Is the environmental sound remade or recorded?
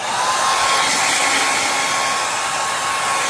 recorded